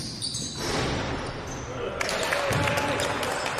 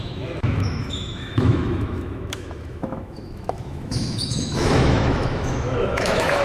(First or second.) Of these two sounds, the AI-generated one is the second